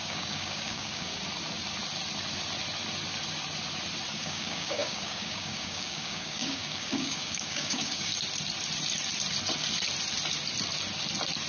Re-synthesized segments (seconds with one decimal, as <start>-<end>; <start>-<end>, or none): 0.0-1.2; 4.1-8.1